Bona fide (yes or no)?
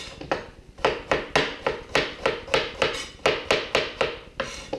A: yes